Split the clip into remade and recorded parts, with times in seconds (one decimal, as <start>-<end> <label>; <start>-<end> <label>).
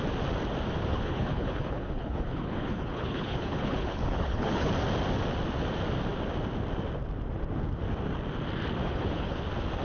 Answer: 0.0-0.9 recorded; 0.9-4.7 remade; 4.7-8.8 recorded; 8.8-9.4 remade; 9.4-9.8 recorded